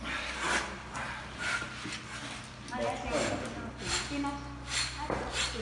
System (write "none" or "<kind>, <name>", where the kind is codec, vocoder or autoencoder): none